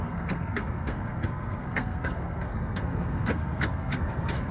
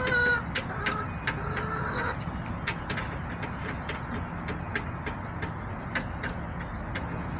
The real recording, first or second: second